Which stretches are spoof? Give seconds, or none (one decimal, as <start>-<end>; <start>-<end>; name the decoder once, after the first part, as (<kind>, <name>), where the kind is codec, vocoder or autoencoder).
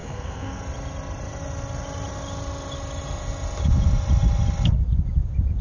0.0-0.6 (codec, SNAC)